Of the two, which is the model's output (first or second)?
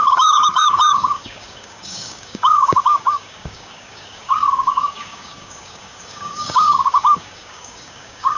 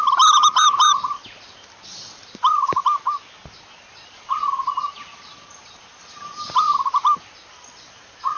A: first